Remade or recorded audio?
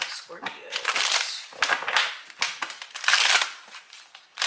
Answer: recorded